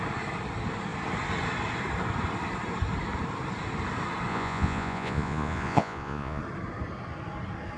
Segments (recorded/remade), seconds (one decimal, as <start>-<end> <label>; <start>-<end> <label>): 0.0-4.3 recorded; 4.3-6.4 remade; 6.4-7.8 recorded